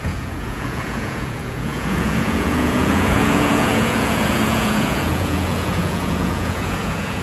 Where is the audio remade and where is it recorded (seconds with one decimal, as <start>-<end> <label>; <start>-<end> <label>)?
0.0-7.2 remade